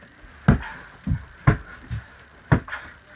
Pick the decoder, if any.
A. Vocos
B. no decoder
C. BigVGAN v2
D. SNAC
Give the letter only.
B